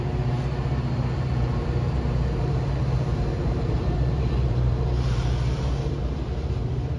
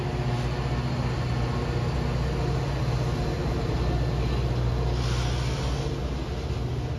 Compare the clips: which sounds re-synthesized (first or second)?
first